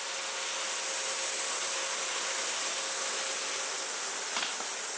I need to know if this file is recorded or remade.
recorded